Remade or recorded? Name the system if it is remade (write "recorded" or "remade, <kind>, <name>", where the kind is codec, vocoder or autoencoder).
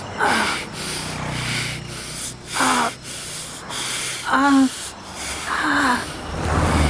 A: recorded